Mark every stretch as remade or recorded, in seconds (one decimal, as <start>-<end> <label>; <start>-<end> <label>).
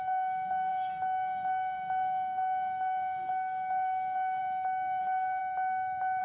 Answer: 0.0-4.4 remade; 4.4-5.0 recorded; 5.0-5.4 remade; 5.4-6.2 recorded